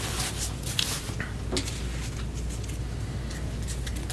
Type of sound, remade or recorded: recorded